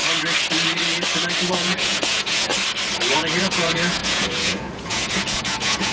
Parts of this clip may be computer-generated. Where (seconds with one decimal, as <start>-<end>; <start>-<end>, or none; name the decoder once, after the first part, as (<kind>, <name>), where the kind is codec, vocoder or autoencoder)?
1.5-2.5 (vocoder, Vocos); 3.4-5.9